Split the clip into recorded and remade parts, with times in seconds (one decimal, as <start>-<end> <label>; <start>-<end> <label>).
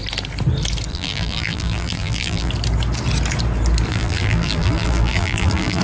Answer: 0.0-0.9 recorded; 0.9-2.5 remade; 2.5-3.9 recorded; 3.9-5.8 remade